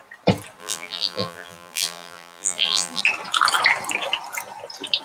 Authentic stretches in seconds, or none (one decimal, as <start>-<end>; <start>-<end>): 0.0-0.6; 3.0-5.0

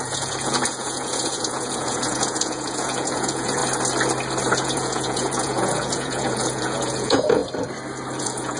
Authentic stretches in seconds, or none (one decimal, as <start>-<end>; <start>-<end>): 3.6-4.5; 7.4-8.2